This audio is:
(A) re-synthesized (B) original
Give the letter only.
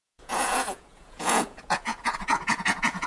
A